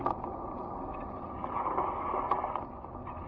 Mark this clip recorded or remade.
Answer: recorded